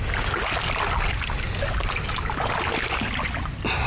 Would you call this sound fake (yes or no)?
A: no